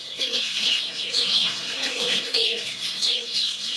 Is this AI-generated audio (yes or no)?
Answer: yes